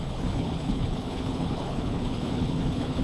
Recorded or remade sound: remade